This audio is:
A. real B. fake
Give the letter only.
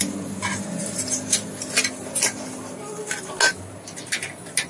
A